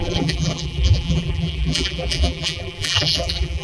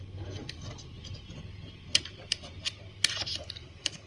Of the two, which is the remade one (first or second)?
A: first